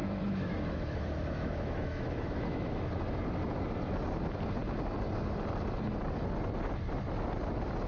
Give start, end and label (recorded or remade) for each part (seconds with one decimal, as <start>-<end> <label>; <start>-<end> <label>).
0.0-2.8 remade; 2.8-7.9 recorded